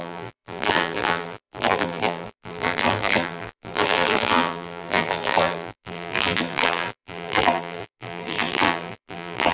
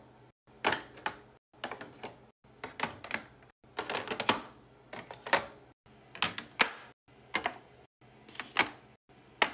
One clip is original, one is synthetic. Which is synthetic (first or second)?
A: first